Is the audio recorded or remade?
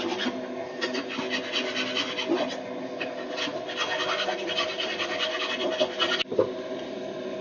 recorded